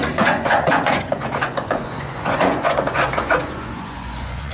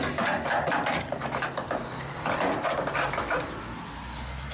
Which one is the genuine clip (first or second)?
second